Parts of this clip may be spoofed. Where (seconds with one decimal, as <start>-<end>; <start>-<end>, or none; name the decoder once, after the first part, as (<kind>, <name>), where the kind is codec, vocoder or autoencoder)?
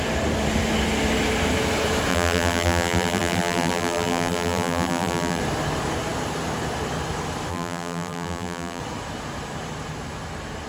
2.1-5.4 (vocoder, BigVGAN v2); 7.5-8.8